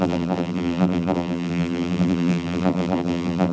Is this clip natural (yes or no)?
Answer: no